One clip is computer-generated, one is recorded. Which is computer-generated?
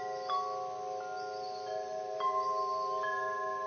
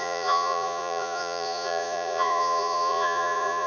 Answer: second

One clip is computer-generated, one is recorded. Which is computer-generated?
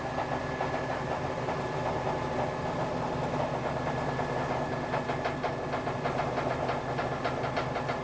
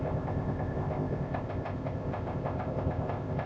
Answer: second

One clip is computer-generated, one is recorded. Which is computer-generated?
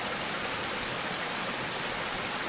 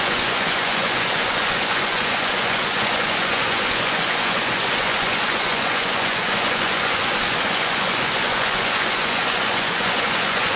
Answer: second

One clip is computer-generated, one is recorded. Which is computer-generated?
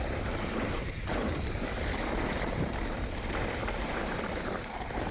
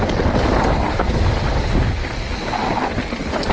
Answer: first